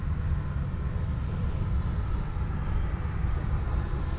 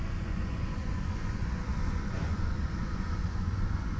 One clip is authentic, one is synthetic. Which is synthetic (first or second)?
second